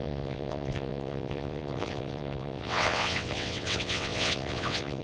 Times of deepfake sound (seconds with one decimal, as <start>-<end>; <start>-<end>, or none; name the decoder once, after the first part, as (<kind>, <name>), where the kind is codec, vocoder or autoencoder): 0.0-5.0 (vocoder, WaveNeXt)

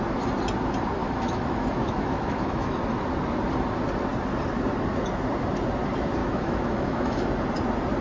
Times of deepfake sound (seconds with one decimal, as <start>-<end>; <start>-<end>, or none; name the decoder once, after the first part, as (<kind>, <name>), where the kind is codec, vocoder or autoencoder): 1.0-2.8 (autoencoder, DAC-VAE); 6.2-7.2

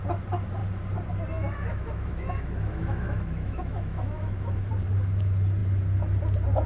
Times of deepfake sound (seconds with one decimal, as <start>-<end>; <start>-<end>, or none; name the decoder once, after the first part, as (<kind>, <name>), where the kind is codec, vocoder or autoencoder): 1.7-4.7 (autoencoder, DAC-VAE)

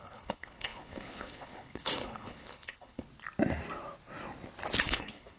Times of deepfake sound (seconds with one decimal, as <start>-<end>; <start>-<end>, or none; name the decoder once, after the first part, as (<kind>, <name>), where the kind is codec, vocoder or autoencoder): 0.0-3.1 (codec, HILCodec); 4.8-5.4

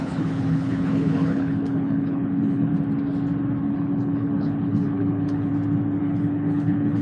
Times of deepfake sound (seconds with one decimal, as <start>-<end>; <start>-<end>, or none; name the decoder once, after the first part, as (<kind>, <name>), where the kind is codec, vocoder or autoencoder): 0.0-2.7 (codec, HILCodec); 3.6-5.5; 6.0-7.0

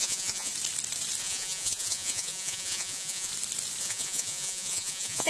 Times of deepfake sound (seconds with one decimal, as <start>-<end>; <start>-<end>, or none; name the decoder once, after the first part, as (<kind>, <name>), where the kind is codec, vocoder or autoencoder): 0.0-0.5 (vocoder, Vocos); 1.2-3.3; 3.8-5.3

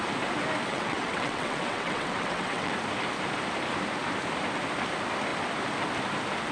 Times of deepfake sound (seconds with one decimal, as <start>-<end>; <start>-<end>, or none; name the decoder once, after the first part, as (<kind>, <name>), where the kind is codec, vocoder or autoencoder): 0.7-2.7 (vocoder, WaveNeXt)